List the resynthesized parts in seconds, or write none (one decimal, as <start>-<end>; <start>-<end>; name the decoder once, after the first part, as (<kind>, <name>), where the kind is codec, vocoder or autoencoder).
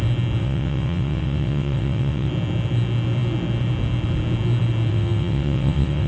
0.4-2.3 (vocoder, WaveNeXt); 4.9-6.1